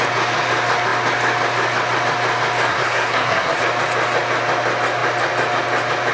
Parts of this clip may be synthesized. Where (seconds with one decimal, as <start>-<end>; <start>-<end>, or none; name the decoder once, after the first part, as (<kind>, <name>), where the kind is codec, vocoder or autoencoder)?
2.7-3.6 (codec, SNAC)